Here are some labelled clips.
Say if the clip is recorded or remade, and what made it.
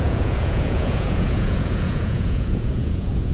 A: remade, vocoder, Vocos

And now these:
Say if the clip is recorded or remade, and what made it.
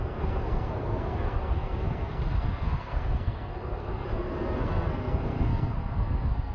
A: remade, codec, SNAC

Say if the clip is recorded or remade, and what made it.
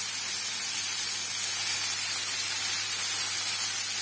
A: recorded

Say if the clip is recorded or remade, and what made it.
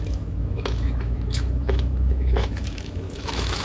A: remade, autoencoder, DAC-VAE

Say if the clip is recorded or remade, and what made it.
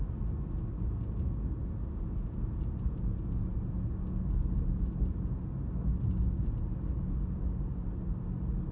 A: recorded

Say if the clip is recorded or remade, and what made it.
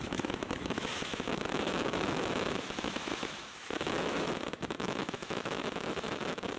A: remade, autoencoder, DAC-VAE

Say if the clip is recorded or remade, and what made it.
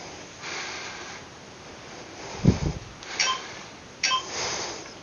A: recorded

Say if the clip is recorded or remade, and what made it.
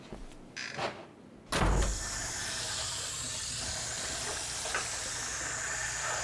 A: recorded